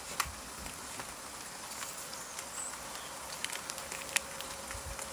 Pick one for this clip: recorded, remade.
recorded